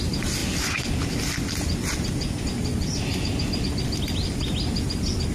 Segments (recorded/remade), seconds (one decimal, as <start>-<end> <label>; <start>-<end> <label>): 0.0-5.3 recorded